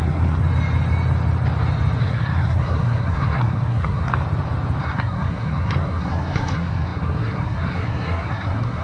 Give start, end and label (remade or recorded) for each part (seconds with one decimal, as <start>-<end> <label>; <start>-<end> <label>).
0.0-0.4 remade; 0.4-2.0 recorded; 2.0-4.1 remade; 4.1-4.8 recorded; 4.8-8.8 remade

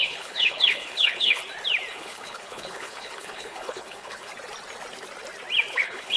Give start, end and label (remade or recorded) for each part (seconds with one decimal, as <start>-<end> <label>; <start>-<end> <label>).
0.0-1.4 remade; 1.4-1.9 recorded; 1.9-4.3 remade; 4.3-5.7 recorded; 5.7-6.2 remade

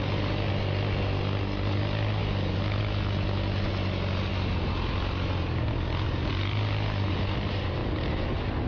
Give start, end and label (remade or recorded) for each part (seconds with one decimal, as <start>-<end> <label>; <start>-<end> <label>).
0.0-8.7 recorded

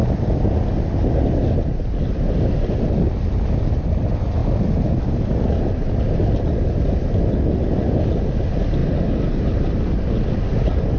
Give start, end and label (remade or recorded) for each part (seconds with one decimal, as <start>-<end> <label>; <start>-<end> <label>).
0.0-11.0 recorded